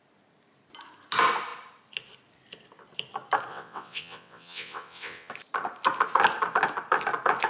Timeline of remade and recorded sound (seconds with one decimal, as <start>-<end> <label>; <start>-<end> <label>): 0.0-3.5 recorded; 3.5-5.3 remade; 5.3-7.5 recorded